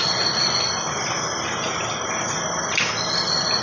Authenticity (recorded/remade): recorded